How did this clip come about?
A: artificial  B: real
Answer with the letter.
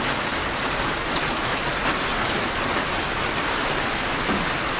B